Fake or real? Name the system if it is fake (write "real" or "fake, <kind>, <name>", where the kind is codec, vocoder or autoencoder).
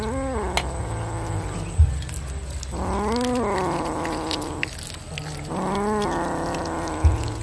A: real